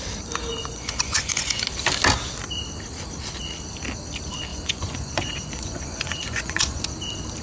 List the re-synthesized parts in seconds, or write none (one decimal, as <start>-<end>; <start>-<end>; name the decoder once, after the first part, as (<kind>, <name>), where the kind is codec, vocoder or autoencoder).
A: 0.7-1.6 (vocoder, Vocos); 4.5-6.8

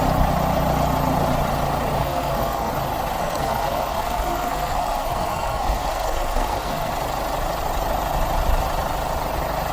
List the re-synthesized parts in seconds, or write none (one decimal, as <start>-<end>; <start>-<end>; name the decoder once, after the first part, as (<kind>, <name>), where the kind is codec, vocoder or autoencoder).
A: 2.0-2.7 (codec, SNAC); 3.2-6.9

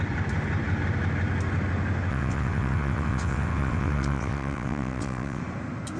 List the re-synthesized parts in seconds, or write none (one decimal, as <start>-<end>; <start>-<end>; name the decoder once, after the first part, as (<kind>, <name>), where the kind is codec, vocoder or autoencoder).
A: 2.1-5.4 (vocoder, WaveNeXt)

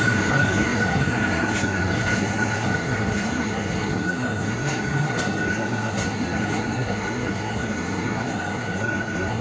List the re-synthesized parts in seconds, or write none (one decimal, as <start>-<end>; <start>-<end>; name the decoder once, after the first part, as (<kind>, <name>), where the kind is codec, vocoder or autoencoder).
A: 0.0-9.4 (codec, SNAC)

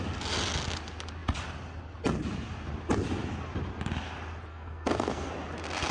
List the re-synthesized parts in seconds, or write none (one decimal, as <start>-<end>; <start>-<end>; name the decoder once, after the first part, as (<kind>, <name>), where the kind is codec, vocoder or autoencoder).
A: 4.5-5.3 (codec, SNAC)